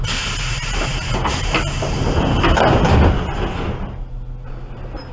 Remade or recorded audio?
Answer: recorded